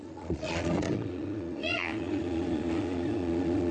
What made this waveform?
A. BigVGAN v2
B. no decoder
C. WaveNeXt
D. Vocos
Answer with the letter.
D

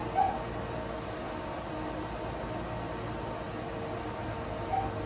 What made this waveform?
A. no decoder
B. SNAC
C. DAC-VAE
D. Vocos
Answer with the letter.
A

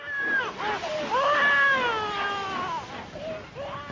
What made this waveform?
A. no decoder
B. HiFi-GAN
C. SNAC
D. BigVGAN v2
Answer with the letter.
A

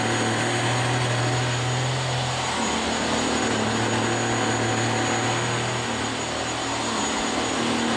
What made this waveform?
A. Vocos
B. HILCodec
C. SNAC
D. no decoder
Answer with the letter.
D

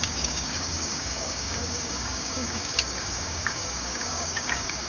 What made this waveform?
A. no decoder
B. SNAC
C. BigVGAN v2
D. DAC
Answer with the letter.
D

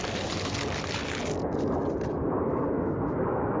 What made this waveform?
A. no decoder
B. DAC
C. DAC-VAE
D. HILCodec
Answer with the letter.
A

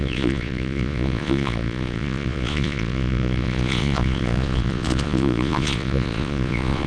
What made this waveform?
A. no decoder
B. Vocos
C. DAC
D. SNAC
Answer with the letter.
B